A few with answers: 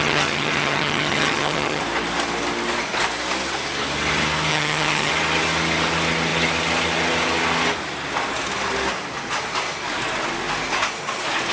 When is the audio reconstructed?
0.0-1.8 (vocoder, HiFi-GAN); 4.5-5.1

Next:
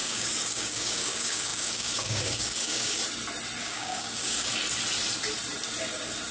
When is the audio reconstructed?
0.0-3.0 (codec, DAC); 3.6-4.5

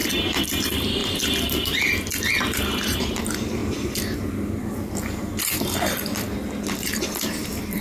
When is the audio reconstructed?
0.0-3.6 (vocoder, BigVGAN v2); 5.6-6.1; 6.7-7.8

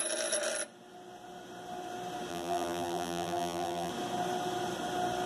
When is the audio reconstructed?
2.3-3.9 (vocoder, BigVGAN v2)

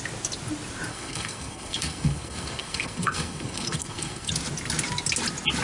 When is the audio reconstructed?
0.9-4.3 (codec, SNAC)